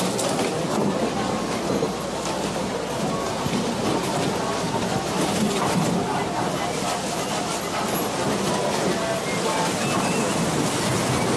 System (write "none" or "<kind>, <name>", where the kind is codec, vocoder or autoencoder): none